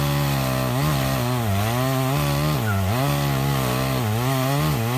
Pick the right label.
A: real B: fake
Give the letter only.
A